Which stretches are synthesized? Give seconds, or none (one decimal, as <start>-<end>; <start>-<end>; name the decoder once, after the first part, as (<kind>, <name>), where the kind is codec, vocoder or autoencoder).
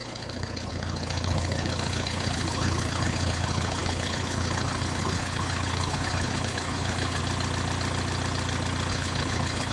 0.0-7.2 (codec, HILCodec); 8.9-9.7